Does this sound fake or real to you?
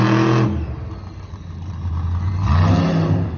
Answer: real